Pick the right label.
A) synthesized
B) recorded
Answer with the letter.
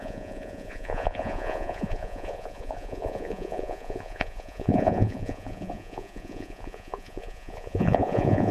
A